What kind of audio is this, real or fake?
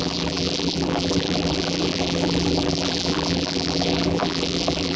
fake